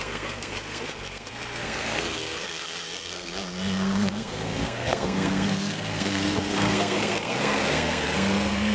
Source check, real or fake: fake